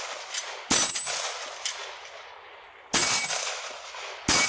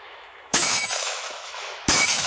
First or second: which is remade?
second